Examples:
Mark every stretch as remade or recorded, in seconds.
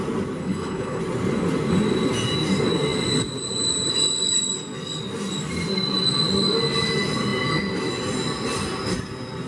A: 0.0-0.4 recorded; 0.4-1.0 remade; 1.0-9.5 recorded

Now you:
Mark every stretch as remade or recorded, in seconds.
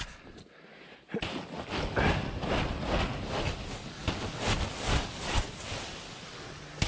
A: 0.0-6.9 recorded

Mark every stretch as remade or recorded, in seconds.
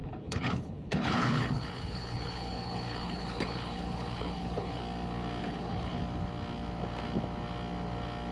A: 0.0-4.8 remade; 4.8-5.4 recorded; 5.4-6.0 remade; 6.0-8.3 recorded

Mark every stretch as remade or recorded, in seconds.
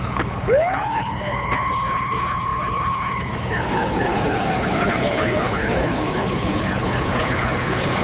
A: 0.0-8.0 remade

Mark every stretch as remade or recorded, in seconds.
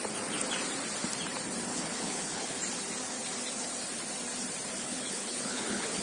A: 0.0-1.7 recorded; 1.7-2.6 remade; 2.6-4.8 recorded; 4.8-6.0 remade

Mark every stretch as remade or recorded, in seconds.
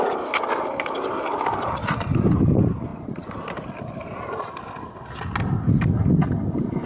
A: 0.0-6.9 recorded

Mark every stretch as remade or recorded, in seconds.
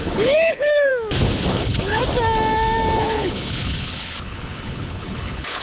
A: 0.0-0.9 remade; 0.9-1.5 recorded; 1.5-2.0 remade; 2.0-3.0 recorded; 3.0-5.6 remade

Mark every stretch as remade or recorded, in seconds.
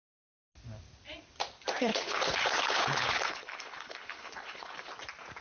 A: 0.0-1.9 recorded; 1.9-4.9 remade; 4.9-5.4 recorded